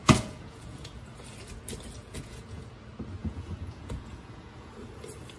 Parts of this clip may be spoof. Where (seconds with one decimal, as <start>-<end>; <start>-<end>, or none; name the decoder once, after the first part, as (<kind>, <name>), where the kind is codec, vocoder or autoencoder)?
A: 0.0-1.0 (vocoder, Vocos); 2.0-2.6; 3.2-4.7